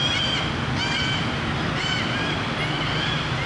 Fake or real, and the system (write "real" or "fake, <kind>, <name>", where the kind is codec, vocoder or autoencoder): real